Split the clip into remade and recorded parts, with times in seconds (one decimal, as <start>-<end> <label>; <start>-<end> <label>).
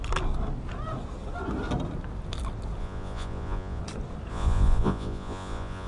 0.0-2.8 recorded; 2.8-3.8 remade; 3.8-4.3 recorded; 4.3-5.9 remade